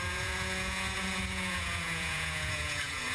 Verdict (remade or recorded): remade